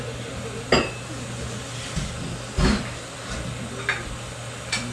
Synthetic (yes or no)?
no